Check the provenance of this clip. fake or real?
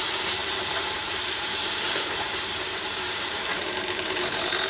fake